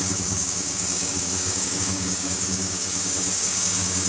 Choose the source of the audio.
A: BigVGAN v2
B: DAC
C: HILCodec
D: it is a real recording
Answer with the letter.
B